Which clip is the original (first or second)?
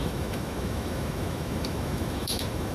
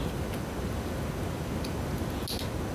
second